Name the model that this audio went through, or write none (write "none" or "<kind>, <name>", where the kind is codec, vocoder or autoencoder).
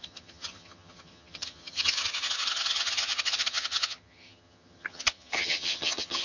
vocoder, HiFi-GAN